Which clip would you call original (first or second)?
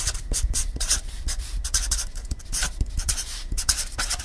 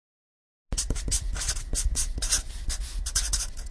second